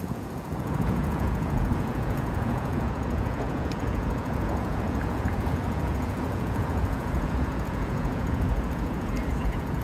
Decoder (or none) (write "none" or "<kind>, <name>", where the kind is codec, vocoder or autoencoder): vocoder, Vocos